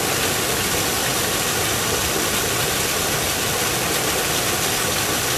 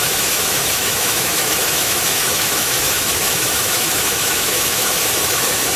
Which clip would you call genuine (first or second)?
first